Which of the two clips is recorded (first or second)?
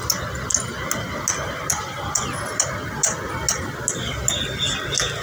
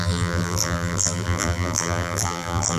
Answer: first